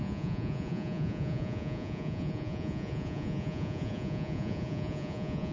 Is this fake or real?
fake